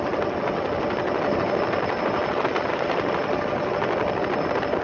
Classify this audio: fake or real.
real